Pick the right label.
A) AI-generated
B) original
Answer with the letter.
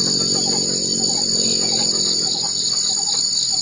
B